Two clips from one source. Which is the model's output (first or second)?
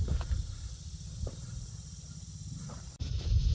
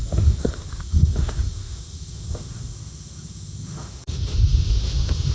second